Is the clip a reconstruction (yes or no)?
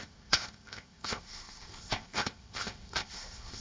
yes